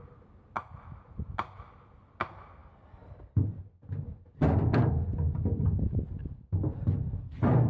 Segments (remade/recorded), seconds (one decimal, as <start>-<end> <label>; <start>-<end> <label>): 0.0-7.7 recorded